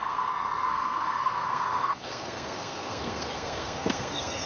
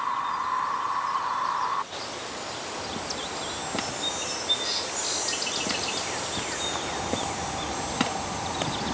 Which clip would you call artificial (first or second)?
first